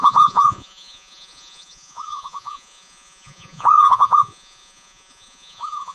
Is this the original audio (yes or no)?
no